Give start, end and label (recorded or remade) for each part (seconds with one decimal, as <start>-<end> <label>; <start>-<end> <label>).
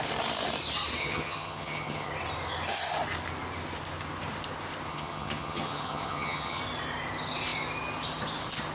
0.0-1.0 recorded; 1.0-2.1 remade; 2.1-4.9 recorded; 4.9-6.6 remade; 6.6-8.7 recorded